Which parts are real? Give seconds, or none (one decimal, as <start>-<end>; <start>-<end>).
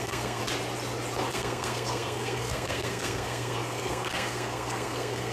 0.4-1.3